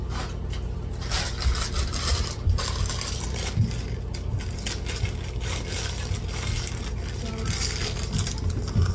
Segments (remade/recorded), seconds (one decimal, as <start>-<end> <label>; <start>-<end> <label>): 0.0-2.1 recorded; 2.1-3.5 remade; 3.5-8.9 recorded